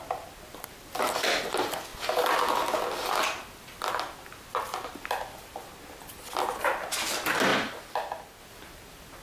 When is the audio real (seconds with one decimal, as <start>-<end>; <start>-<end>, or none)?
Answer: 0.0-9.2